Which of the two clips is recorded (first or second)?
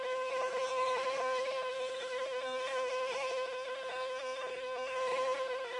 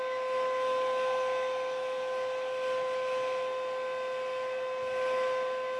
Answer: second